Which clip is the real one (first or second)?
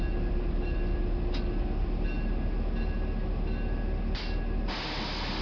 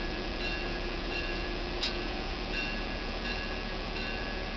first